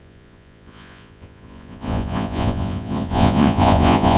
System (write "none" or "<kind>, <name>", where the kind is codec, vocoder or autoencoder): vocoder, Vocos